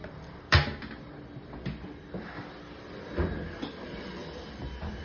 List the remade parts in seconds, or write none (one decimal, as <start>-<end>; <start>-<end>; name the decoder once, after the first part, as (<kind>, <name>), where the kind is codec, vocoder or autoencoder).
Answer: none